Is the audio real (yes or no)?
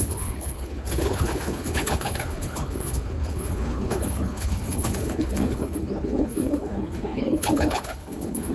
no